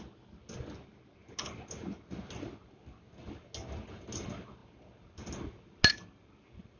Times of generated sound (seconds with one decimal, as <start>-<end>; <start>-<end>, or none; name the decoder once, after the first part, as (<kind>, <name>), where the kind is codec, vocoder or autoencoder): none